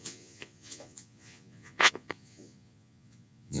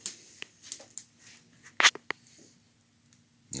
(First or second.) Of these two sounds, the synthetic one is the first